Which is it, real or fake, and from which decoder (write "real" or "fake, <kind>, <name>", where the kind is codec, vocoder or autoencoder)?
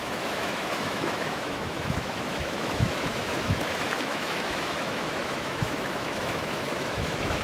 fake, autoencoder, DAC-VAE